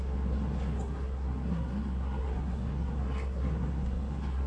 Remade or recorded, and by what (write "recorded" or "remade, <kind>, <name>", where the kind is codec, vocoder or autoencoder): remade, codec, SNAC